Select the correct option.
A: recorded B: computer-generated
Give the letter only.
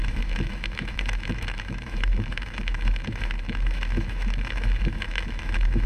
B